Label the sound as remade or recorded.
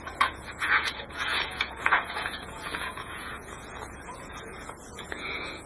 remade